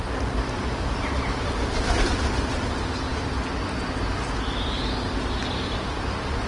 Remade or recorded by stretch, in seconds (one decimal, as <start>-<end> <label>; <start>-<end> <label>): 0.0-6.5 recorded